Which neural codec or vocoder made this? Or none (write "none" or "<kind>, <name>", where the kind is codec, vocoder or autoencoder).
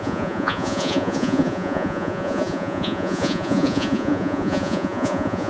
vocoder, Vocos